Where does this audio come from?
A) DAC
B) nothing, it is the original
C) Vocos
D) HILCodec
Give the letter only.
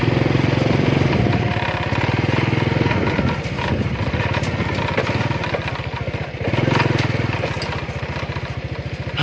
B